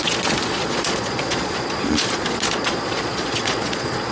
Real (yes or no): no